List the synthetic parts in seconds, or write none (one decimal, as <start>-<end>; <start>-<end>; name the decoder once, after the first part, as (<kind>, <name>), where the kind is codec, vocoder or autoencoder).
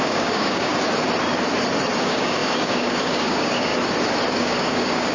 0.0-0.7 (codec, DAC); 2.0-3.7; 4.3-5.1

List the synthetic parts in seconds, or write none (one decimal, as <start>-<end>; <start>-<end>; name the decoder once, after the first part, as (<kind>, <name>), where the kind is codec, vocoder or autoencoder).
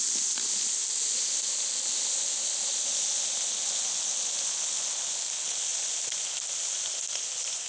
none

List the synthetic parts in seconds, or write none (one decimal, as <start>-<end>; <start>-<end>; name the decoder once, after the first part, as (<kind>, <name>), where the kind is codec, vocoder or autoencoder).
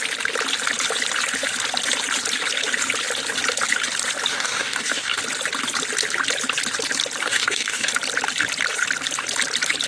4.3-5.2 (codec, DAC); 7.2-7.9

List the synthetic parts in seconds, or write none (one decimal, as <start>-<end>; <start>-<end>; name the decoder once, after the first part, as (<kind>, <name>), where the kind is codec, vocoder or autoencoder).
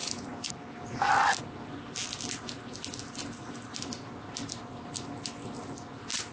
none